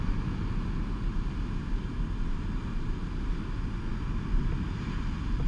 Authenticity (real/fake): real